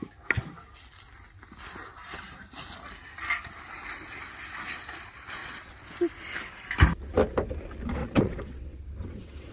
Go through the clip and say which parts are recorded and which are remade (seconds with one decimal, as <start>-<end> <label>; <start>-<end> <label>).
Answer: 0.0-5.4 recorded; 5.4-5.9 remade; 5.9-8.0 recorded; 8.0-9.5 remade